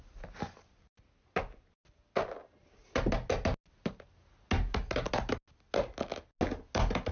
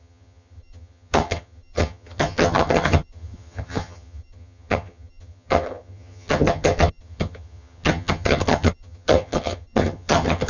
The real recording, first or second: first